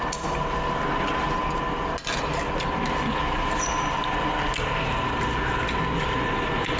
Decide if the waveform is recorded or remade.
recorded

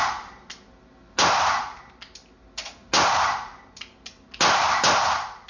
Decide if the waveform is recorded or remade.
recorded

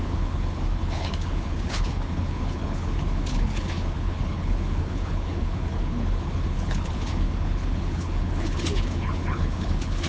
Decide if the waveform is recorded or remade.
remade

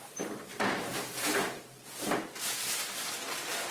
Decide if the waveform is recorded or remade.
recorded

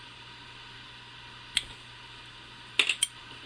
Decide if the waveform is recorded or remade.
recorded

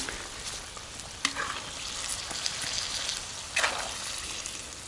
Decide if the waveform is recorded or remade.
recorded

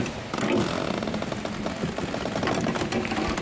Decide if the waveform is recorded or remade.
recorded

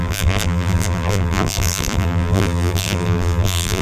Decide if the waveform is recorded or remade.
remade